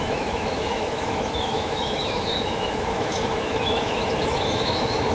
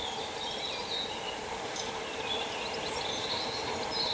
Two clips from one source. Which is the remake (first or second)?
first